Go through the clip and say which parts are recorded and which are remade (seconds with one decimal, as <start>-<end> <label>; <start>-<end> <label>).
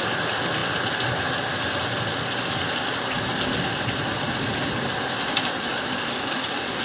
0.0-5.7 recorded; 5.7-6.8 remade